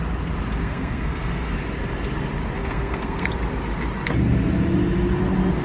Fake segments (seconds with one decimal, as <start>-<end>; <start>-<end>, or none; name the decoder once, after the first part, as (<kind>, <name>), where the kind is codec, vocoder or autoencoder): 0.6-1.5 (codec, SNAC); 2.6-3.3